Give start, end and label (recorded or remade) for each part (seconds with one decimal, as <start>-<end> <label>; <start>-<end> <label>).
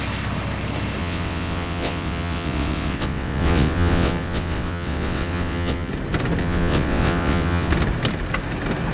0.0-1.0 recorded; 1.0-5.9 remade; 5.9-6.4 recorded; 6.4-7.7 remade; 7.7-8.9 recorded